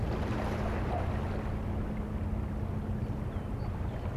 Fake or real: real